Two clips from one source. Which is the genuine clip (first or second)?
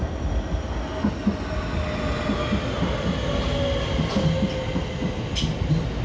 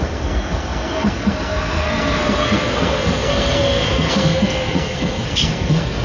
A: first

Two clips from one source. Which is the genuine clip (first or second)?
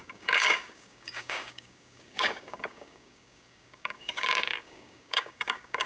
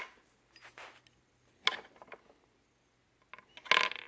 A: second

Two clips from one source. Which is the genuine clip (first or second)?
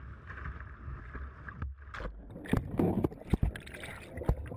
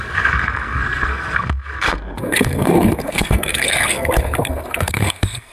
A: first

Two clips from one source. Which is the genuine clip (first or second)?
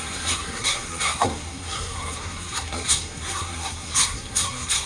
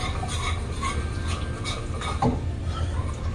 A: second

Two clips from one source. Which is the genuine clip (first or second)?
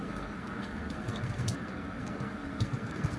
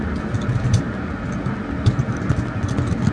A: second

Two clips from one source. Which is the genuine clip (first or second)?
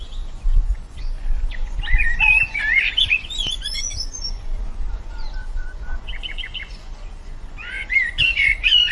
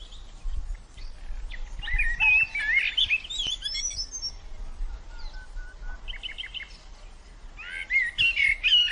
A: second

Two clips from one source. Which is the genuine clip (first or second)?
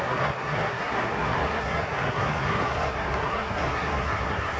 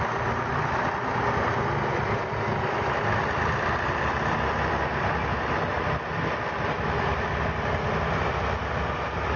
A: second